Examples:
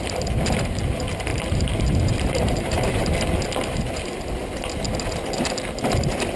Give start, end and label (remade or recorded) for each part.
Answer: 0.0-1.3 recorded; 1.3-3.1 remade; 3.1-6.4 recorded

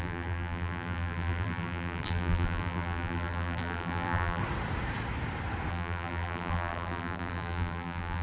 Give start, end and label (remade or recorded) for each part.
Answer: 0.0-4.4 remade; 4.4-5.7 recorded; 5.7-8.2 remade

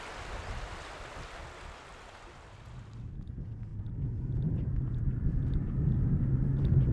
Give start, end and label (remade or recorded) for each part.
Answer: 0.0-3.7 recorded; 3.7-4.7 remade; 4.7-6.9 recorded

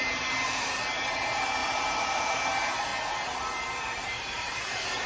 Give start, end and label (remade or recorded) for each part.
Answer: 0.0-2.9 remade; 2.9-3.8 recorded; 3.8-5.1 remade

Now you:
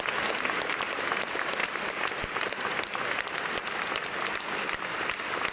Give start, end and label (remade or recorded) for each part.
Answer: 0.0-1.6 recorded; 1.6-2.5 remade; 2.5-5.5 recorded